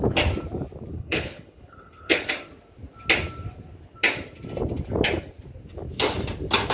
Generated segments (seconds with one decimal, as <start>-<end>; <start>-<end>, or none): 0.9-2.3

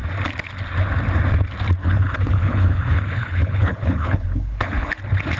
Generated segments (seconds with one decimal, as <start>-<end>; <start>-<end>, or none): 1.8-5.0

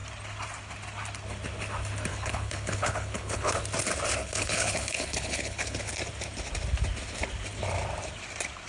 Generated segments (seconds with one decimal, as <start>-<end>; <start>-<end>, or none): 2.1-3.6; 4.2-5.9

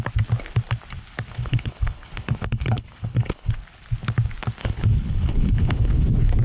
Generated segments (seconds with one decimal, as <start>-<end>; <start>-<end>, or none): 1.3-3.6; 4.6-6.4